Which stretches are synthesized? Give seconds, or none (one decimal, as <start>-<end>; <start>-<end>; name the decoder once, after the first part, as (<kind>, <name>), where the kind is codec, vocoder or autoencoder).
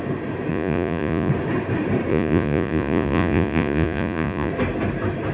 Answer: 0.5-1.3 (vocoder, Vocos); 2.1-4.5